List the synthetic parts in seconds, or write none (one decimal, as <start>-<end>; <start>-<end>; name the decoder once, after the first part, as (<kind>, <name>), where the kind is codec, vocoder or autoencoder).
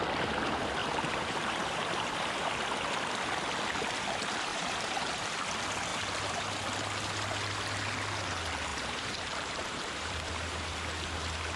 0.8-2.3 (vocoder, BigVGAN v2); 4.5-5.3; 5.9-6.6; 8.7-10.3